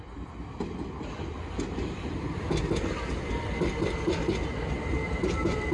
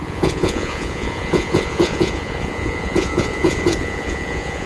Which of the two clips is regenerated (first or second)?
second